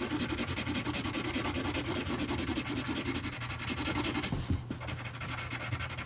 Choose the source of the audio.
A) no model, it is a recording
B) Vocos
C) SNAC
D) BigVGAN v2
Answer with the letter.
A